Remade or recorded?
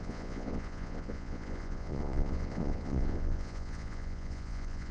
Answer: remade